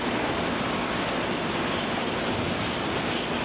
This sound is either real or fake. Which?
real